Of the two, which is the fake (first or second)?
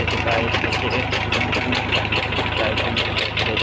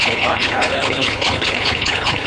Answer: second